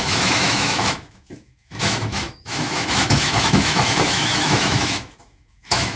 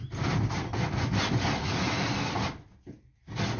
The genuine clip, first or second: second